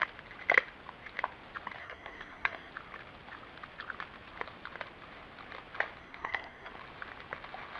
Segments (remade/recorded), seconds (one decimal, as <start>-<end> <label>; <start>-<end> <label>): 0.0-1.8 recorded; 1.8-2.7 remade; 2.7-6.0 recorded; 6.0-6.7 remade; 6.7-7.8 recorded